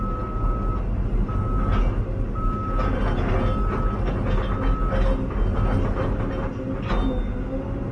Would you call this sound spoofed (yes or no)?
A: no